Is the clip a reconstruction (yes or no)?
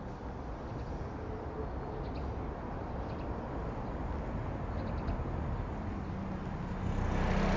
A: no